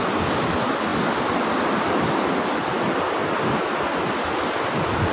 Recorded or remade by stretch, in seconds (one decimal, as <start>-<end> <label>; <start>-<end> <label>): 0.0-5.1 recorded